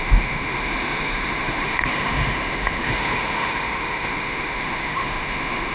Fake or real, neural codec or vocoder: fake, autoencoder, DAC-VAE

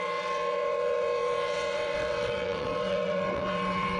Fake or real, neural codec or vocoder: fake, vocoder, WaveNeXt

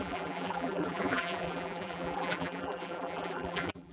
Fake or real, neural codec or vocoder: fake, vocoder, BigVGAN v2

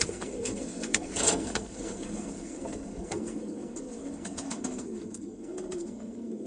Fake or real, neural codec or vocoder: fake, codec, SNAC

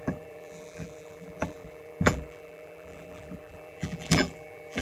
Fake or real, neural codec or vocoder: fake, vocoder, BigVGAN v2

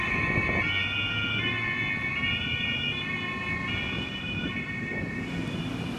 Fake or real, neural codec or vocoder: real